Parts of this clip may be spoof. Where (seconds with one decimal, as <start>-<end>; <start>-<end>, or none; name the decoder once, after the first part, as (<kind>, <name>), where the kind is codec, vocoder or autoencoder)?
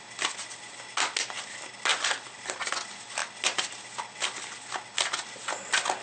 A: none